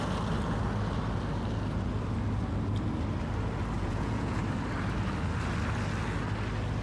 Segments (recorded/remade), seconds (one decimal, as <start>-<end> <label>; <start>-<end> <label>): 0.0-3.8 recorded; 3.8-4.4 remade; 4.4-6.8 recorded